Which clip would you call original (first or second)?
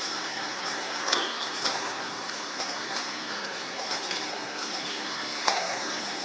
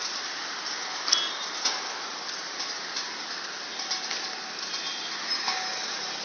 second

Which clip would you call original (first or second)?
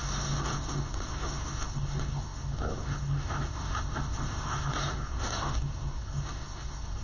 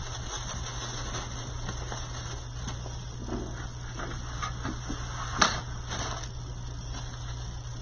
second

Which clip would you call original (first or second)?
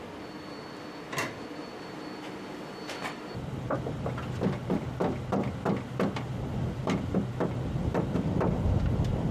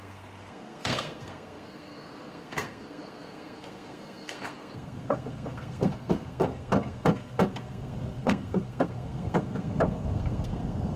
first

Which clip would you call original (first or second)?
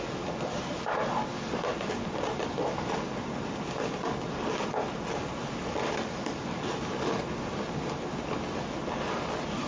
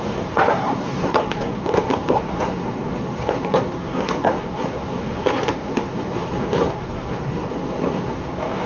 first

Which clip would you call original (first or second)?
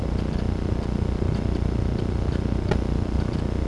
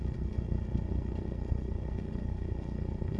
first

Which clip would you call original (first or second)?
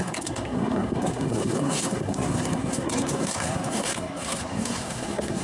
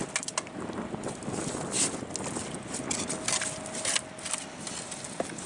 second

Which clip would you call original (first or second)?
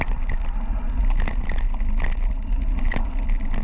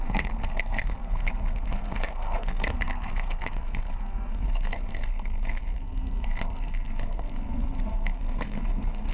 first